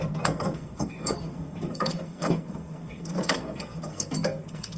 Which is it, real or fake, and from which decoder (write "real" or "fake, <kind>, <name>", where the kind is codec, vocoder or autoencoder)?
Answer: fake, codec, SNAC